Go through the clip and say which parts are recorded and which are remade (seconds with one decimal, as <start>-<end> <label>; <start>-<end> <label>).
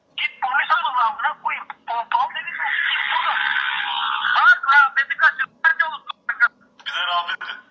0.0-1.4 remade; 1.4-3.8 recorded; 3.8-5.7 remade; 5.7-6.6 recorded; 6.6-7.7 remade